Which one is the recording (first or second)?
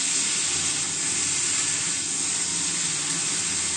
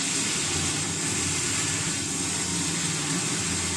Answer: first